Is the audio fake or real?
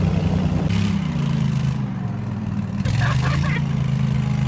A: real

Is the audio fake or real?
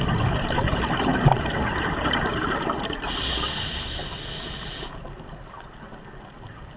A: real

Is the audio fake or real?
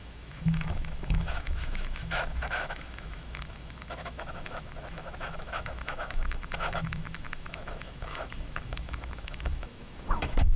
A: fake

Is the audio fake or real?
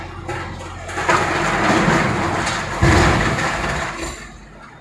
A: real